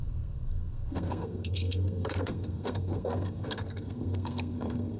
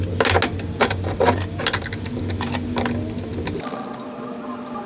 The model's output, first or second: first